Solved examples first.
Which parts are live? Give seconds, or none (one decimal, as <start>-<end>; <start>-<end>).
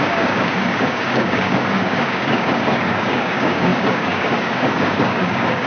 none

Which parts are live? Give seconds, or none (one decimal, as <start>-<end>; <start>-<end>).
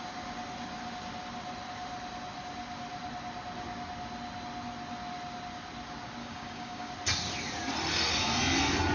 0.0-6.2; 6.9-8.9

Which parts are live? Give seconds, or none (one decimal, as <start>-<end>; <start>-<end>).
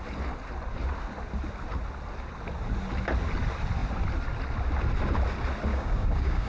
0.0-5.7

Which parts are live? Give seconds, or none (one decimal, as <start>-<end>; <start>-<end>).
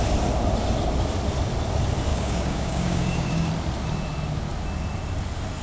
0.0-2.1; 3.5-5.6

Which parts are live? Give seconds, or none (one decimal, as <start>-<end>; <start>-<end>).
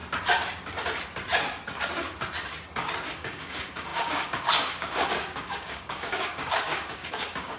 0.0-3.1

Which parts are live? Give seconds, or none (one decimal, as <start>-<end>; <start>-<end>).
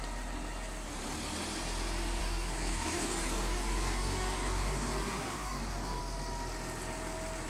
0.0-2.2; 6.0-7.5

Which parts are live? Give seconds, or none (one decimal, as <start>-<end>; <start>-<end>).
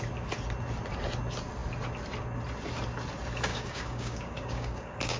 0.0-3.5